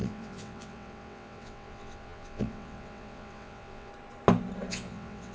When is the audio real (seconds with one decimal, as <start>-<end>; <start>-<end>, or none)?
3.9-4.7